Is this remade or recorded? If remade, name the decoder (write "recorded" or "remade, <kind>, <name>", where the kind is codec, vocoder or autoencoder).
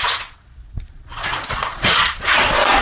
remade, vocoder, Vocos